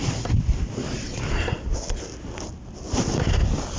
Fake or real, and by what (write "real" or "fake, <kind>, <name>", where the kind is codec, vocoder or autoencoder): real